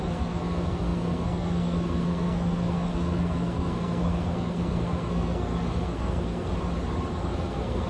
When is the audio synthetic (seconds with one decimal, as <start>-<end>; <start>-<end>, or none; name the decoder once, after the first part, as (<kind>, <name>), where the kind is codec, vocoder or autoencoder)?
0.0-6.5 (codec, SNAC); 7.1-7.9